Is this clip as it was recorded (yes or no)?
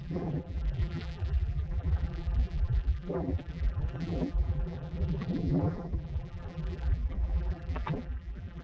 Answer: no